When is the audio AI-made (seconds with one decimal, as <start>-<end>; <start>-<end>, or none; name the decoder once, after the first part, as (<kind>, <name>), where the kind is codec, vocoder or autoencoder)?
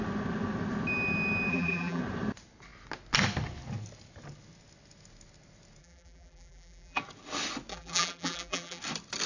1.5-2.0 (vocoder, BigVGAN v2); 5.8-7.0; 7.7-8.8